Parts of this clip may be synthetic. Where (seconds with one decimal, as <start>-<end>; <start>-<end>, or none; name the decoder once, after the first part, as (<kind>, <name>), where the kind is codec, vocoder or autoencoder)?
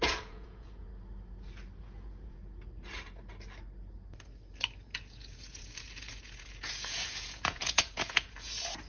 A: 0.0-0.9 (vocoder, Vocos); 1.8-2.4; 4.8-8.9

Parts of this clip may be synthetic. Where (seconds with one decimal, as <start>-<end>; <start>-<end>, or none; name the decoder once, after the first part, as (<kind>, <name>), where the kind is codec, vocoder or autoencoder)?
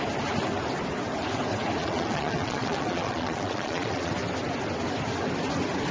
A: 1.8-4.1 (vocoder, Vocos)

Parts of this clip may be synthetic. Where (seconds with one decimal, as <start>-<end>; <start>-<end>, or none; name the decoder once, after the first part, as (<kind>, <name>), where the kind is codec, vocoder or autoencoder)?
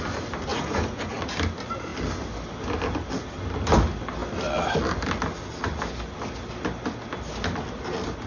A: 0.5-1.2 (vocoder, Vocos)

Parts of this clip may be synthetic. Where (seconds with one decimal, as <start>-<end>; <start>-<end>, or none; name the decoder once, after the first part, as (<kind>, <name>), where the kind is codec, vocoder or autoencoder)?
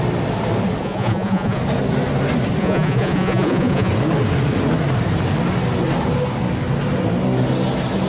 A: 0.8-1.6 (vocoder, Vocos); 2.6-3.9